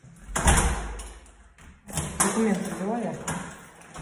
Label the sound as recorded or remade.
recorded